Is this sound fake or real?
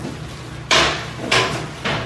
real